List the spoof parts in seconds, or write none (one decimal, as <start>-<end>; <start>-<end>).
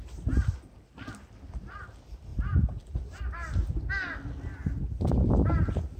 none